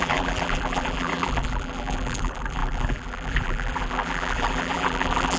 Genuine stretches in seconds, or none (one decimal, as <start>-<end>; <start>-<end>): none